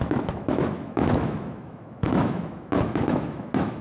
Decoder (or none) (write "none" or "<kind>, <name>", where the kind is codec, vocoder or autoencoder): autoencoder, DAC-VAE